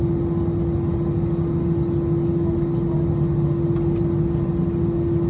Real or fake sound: real